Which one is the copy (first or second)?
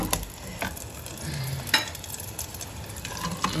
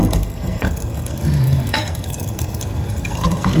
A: second